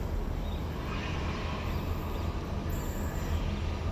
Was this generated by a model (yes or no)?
no